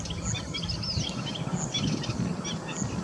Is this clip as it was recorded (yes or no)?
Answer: yes